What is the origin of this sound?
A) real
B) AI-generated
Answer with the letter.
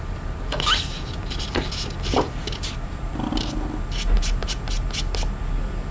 A